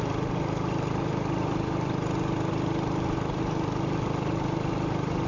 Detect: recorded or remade recorded